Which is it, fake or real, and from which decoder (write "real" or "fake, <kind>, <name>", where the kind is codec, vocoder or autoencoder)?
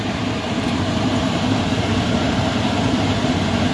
fake, vocoder, BigVGAN v2